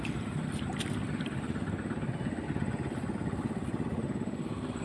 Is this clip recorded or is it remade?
recorded